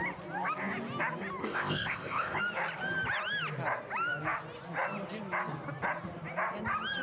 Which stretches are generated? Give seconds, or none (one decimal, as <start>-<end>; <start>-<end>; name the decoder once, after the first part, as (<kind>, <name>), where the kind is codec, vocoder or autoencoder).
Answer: 1.4-2.4 (codec, ZipCodec)